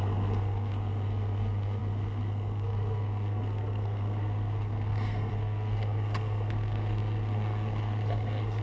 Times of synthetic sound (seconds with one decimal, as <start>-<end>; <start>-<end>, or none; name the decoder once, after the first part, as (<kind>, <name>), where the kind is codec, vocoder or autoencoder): 0.0-8.6 (codec, SNAC)